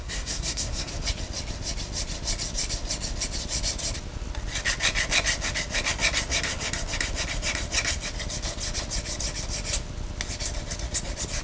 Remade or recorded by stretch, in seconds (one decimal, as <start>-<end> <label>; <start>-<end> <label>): 0.0-0.9 remade; 0.9-11.4 recorded